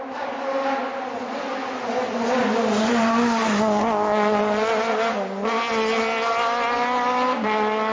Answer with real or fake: real